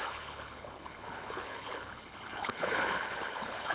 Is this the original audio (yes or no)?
no